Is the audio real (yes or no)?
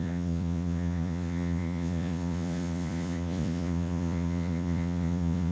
no